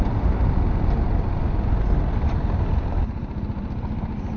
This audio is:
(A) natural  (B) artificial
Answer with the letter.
A